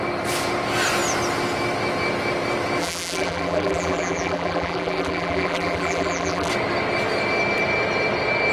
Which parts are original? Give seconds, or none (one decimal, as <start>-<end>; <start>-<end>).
0.0-2.8; 6.5-8.5